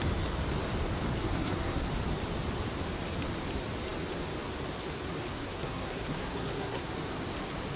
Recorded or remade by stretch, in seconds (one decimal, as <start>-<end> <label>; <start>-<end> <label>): 0.0-1.2 recorded; 1.2-1.9 remade; 1.9-5.3 recorded; 5.3-6.9 remade; 6.9-7.8 recorded